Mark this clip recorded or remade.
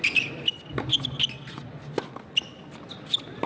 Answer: recorded